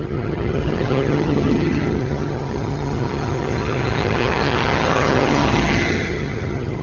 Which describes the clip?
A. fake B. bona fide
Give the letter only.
A